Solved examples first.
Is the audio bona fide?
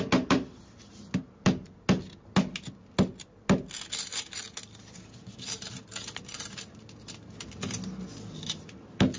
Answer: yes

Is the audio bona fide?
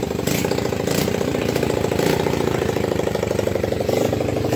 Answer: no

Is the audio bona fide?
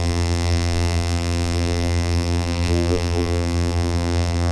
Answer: no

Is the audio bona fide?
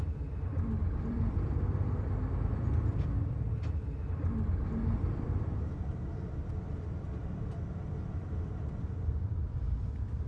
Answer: no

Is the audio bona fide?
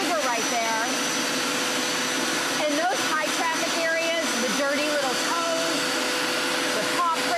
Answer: yes